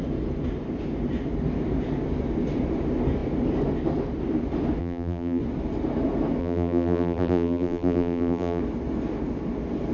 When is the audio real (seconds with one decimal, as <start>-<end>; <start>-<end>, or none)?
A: 0.0-4.8; 5.4-6.4; 8.6-9.9